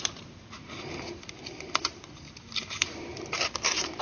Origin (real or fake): fake